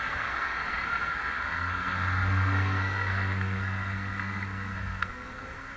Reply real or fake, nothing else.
fake